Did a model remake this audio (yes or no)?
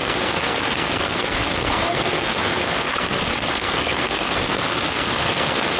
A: yes